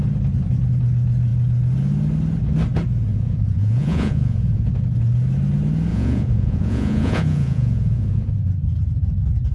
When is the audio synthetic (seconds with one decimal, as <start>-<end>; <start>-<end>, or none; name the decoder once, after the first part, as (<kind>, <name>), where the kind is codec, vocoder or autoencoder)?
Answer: 3.1-4.7 (vocoder, Vocos); 5.9-8.3